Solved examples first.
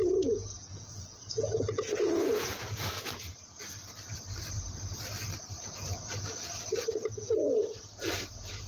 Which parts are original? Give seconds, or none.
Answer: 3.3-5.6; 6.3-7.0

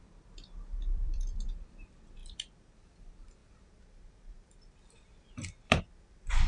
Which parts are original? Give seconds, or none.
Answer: none

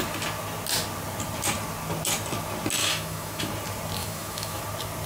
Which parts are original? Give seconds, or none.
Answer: 0.0-2.8; 3.5-4.0; 4.6-5.1

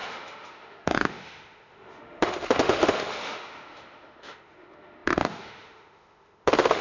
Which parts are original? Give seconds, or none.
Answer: none

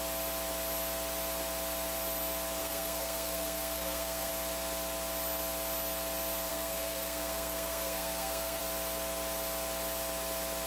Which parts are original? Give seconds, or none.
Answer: 0.0-2.6; 4.3-6.5; 8.6-10.7